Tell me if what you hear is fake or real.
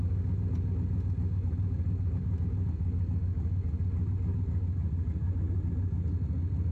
real